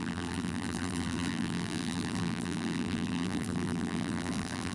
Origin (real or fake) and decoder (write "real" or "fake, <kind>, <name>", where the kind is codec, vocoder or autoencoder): fake, vocoder, BigVGAN v2